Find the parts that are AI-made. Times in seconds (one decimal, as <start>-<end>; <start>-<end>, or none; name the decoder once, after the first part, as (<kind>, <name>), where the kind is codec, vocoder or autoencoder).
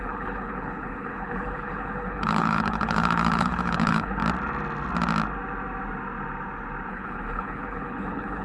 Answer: 0.0-4.2 (codec, HILCodec); 6.9-8.4